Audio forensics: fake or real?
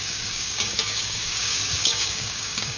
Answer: fake